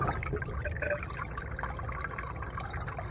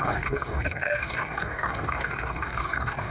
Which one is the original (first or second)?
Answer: first